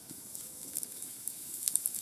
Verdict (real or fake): fake